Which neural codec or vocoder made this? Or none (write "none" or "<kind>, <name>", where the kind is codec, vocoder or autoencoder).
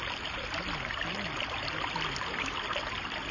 none